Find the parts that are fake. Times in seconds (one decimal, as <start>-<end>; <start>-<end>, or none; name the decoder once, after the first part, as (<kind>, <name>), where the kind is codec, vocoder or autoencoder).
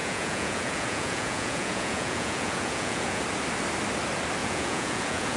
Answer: 0.0-3.2 (vocoder, Vocos); 4.4-5.4